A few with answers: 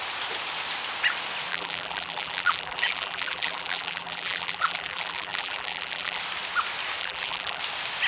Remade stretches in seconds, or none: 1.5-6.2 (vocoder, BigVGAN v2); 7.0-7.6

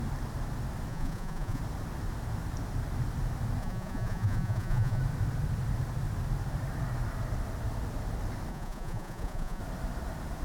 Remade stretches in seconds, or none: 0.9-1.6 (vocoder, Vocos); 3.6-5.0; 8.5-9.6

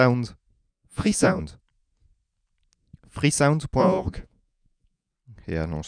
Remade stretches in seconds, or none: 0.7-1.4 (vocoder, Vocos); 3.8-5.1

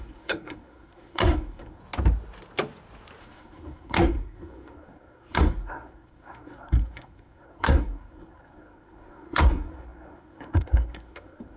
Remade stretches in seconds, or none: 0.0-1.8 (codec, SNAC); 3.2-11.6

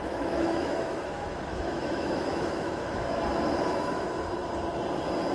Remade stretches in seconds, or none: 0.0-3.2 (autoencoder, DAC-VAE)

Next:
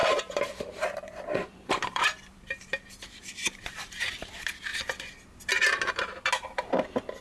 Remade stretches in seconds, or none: 0.0-4.3 (vocoder, BigVGAN v2)